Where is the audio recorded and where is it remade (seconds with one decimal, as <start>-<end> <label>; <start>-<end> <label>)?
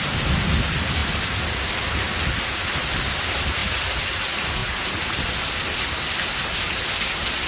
0.0-7.5 recorded